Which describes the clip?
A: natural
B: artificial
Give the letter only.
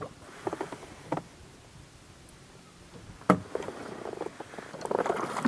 A